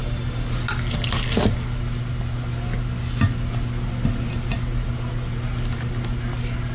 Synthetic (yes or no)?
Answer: no